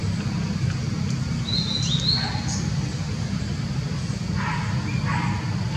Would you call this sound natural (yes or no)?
yes